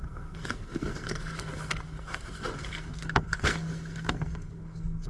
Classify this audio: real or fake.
fake